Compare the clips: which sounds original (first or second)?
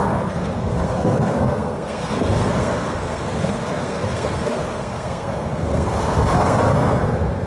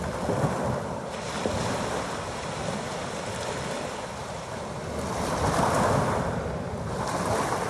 second